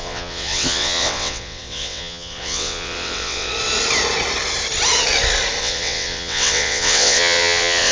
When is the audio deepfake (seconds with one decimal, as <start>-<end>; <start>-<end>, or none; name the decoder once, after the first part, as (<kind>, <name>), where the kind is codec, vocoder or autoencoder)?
0.0-3.5 (vocoder, WaveNeXt); 5.6-7.9